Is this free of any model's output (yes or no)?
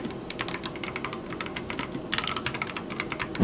yes